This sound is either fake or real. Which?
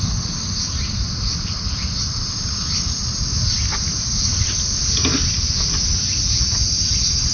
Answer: real